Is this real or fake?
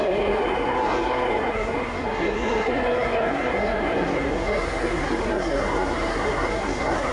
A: fake